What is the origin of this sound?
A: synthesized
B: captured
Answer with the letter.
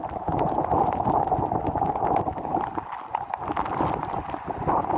B